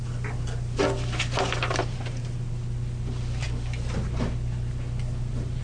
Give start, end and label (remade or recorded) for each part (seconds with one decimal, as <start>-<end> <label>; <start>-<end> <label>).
0.0-5.6 recorded